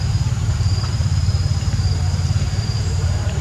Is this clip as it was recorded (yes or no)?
no